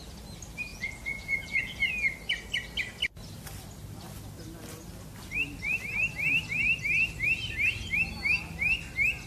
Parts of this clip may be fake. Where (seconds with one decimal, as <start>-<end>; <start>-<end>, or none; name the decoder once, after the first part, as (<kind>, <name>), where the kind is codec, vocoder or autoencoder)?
0.7-1.9 (vocoder, Vocos)